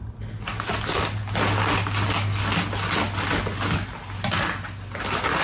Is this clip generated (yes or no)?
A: no